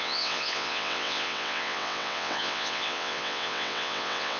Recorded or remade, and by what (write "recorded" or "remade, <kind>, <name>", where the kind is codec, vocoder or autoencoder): remade, vocoder, WaveNeXt